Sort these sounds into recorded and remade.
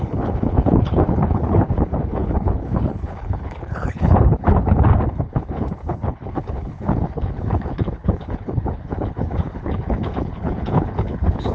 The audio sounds remade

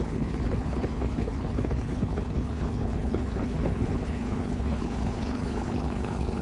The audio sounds remade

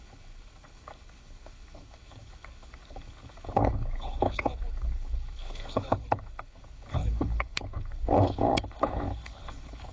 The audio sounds remade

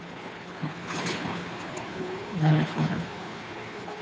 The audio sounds remade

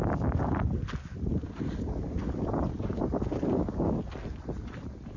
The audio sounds recorded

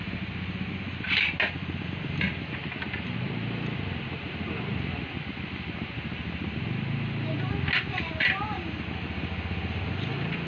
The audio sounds recorded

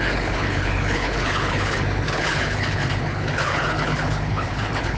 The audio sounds remade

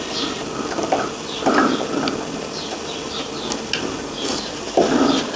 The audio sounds recorded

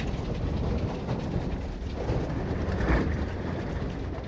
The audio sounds recorded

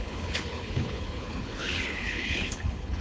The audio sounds remade